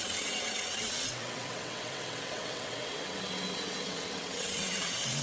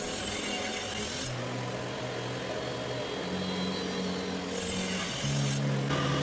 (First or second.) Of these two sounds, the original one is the second